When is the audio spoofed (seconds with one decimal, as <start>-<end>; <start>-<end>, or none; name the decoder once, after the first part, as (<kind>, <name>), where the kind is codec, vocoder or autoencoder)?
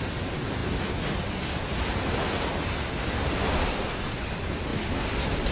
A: none